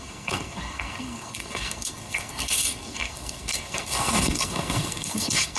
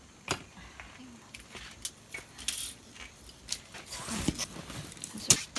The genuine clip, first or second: second